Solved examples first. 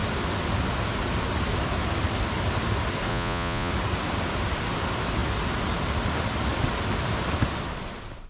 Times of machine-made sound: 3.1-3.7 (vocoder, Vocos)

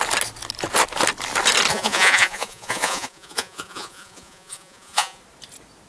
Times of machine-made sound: 1.7-5.2 (vocoder, Vocos)

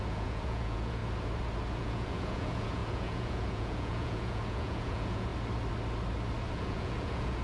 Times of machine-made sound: 0.0-1.0 (vocoder, Vocos); 1.8-5.3; 6.5-7.4

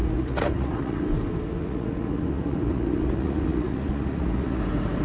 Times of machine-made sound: 0.0-1.0 (vocoder, Vocos); 1.6-4.6